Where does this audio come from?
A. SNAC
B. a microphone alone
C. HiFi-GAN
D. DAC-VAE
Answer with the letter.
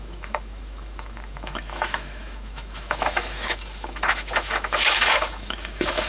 D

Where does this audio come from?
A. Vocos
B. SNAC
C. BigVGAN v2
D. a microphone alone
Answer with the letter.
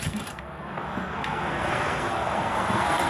B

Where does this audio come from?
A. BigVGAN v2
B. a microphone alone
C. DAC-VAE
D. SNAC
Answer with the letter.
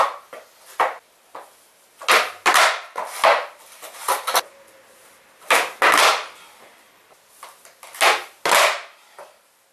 B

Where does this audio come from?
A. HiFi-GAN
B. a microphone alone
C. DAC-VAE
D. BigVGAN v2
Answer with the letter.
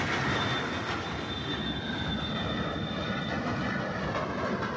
B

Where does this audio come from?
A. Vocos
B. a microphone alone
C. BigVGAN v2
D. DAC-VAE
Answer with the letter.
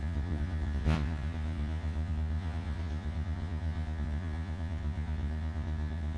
A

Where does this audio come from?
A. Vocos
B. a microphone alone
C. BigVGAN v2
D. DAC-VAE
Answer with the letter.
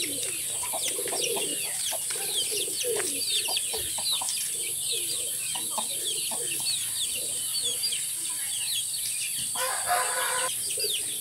B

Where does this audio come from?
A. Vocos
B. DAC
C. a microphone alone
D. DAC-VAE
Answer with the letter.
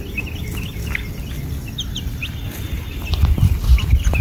C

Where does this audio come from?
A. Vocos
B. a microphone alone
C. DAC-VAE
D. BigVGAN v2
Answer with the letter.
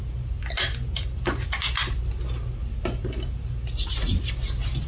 B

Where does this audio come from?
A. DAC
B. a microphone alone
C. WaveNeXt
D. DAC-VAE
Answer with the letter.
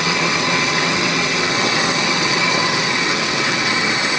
C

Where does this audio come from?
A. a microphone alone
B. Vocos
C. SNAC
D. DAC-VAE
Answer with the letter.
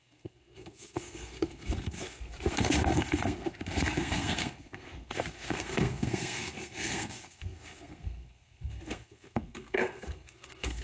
C